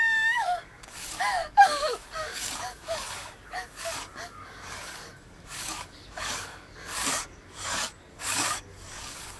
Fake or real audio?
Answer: fake